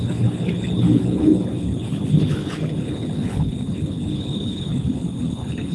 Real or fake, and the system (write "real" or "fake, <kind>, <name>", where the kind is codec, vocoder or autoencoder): fake, codec, HILCodec